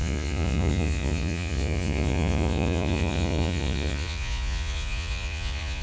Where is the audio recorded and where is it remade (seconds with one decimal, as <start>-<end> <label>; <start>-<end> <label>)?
0.0-5.8 remade